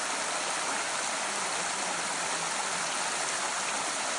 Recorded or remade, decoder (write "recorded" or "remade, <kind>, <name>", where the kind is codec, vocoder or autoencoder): recorded